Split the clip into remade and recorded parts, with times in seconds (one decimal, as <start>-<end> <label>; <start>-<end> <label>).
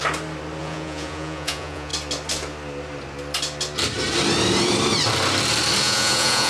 0.0-0.6 recorded; 0.6-1.9 remade; 1.9-5.8 recorded; 5.8-6.5 remade